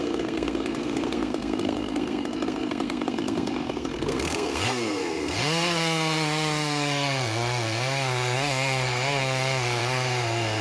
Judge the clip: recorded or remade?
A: remade